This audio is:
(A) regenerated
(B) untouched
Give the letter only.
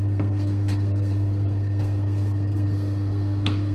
A